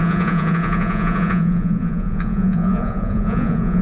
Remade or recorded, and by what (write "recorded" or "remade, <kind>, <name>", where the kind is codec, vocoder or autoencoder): remade, vocoder, Vocos